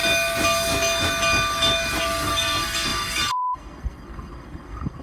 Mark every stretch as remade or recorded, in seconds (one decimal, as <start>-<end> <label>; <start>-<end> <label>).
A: 0.0-2.0 recorded; 2.0-5.0 remade